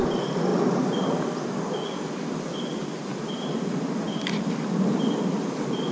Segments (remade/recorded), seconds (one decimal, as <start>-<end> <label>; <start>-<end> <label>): 0.0-5.9 recorded